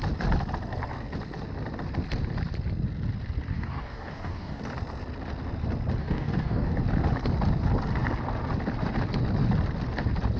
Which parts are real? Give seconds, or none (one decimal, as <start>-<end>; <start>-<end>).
0.0-3.5; 4.6-6.0; 6.7-10.4